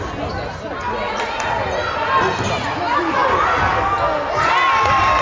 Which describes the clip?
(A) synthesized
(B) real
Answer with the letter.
B